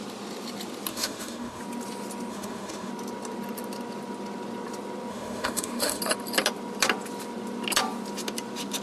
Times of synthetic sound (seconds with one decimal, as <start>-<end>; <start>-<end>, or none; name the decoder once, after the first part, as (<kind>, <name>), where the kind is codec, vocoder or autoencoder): 0.9-1.6 (autoencoder, DAC-VAE); 2.3-2.9; 5.1-6.0